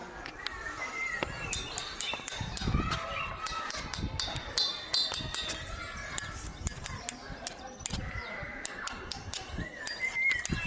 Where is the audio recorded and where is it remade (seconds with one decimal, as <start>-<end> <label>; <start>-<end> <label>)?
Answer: 0.0-6.5 recorded; 6.5-9.8 remade; 9.8-10.7 recorded